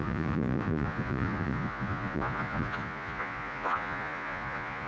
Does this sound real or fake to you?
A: fake